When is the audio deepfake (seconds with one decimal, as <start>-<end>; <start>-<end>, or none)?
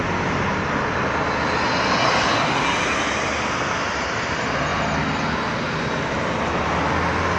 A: none